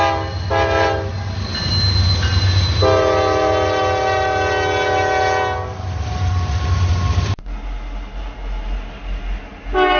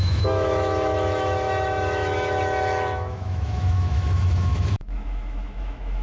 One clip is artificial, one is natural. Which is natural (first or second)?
first